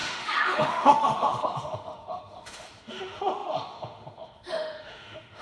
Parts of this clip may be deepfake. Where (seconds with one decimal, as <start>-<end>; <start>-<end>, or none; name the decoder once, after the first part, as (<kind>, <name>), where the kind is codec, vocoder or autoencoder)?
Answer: 0.0-5.4 (autoencoder, DAC-VAE)